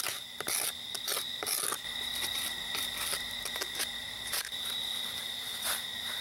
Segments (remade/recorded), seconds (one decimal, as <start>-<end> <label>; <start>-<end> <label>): 0.0-4.0 recorded; 4.0-6.2 remade